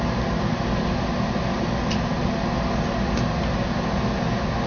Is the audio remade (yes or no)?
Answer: no